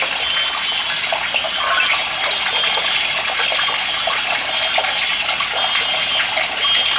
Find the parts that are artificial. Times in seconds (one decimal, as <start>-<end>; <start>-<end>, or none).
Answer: none